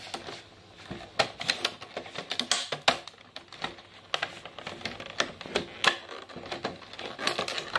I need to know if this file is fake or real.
real